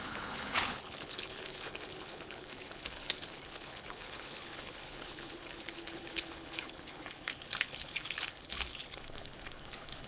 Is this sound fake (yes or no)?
yes